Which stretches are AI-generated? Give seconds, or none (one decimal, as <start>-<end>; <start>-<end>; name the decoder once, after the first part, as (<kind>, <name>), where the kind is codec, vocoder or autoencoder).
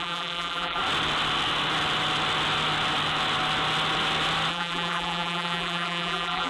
0.0-0.8 (vocoder, BigVGAN v2); 4.5-6.5